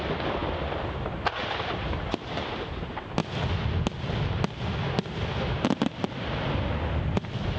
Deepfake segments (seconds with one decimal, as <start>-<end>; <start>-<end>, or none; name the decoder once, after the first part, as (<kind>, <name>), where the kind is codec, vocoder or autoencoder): none